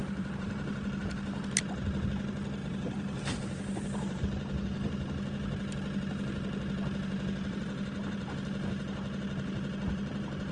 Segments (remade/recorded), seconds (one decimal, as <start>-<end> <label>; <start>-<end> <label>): 0.0-0.9 remade; 0.9-2.6 recorded; 2.6-4.2 remade; 4.2-10.5 recorded

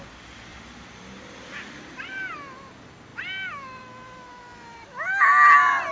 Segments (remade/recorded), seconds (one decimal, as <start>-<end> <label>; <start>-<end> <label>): 0.0-0.5 recorded; 0.5-2.2 remade; 2.2-5.9 recorded

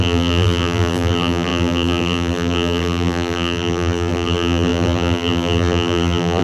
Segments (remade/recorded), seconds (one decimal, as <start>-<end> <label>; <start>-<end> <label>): 0.0-6.4 remade